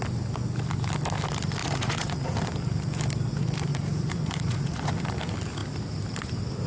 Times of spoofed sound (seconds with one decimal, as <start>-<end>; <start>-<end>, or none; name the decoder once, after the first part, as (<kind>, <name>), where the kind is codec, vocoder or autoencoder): 1.6-2.4 (vocoder, Vocos); 3.7-4.9